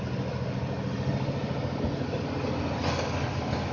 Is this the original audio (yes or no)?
yes